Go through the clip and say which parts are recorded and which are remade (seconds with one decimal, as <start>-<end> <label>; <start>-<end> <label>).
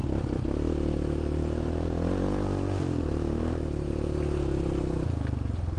0.0-5.8 recorded